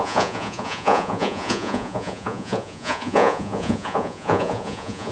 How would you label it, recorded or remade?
remade